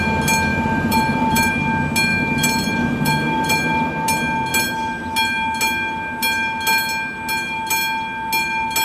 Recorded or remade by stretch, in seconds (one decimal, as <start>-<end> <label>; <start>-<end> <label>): 0.0-0.5 recorded; 0.5-1.5 remade; 1.5-2.1 recorded; 2.1-3.9 remade; 3.9-8.8 recorded